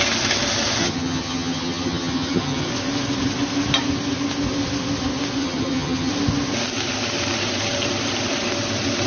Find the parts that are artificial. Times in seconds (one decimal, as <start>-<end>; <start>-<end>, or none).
0.8-2.7; 5.4-6.1